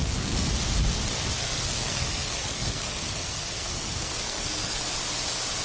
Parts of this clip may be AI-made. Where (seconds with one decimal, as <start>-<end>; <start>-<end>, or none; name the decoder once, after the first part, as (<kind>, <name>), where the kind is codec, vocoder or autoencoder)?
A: 0.0-0.5 (codec, SNAC); 1.4-4.8